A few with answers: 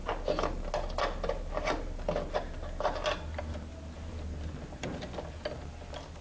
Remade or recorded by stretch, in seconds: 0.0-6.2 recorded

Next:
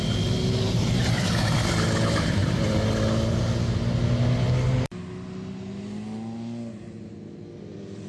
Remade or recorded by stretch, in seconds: 0.0-8.1 recorded

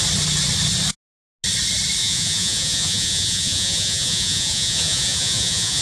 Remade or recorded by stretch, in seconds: 0.0-2.0 recorded; 2.0-5.8 remade

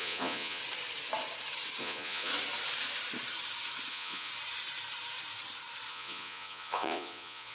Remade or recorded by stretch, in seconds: 0.0-0.6 remade; 0.6-1.8 recorded; 1.8-2.3 remade; 2.3-3.9 recorded; 3.9-4.3 remade; 4.3-5.9 recorded; 5.9-7.5 remade

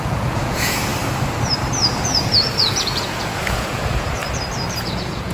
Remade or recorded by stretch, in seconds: 0.0-0.9 remade; 0.9-1.8 recorded; 1.8-4.2 remade; 4.2-4.8 recorded; 4.8-5.3 remade

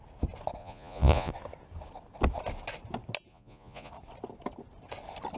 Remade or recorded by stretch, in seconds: 0.0-0.6 recorded; 0.6-1.3 remade; 1.3-3.3 recorded; 3.3-3.9 remade; 3.9-5.4 recorded

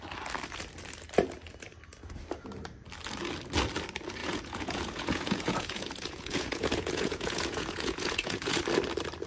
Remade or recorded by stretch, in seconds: 0.0-4.2 recorded; 4.2-8.6 remade; 8.6-9.3 recorded

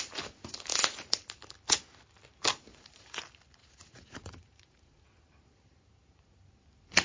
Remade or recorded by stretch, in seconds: 0.0-2.7 recorded; 2.7-3.2 remade; 3.2-3.6 recorded; 3.6-5.3 remade; 5.3-7.0 recorded